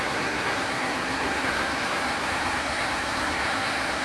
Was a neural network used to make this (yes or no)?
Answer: yes